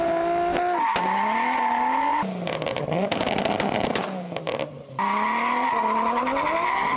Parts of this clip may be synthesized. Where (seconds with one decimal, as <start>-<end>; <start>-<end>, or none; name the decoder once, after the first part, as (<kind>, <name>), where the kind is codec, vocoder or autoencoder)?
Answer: 2.1-3.4 (vocoder, BigVGAN v2)